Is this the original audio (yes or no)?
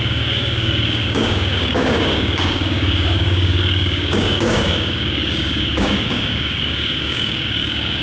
no